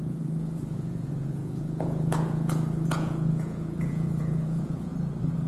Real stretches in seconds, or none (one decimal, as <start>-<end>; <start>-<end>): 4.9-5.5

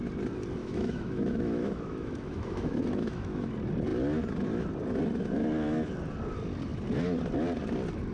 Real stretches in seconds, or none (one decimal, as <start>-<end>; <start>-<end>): 0.0-0.6; 3.5-8.1

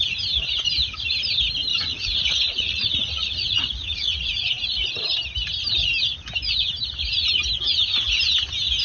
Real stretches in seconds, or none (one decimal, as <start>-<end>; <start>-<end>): 0.0-1.7; 4.9-8.8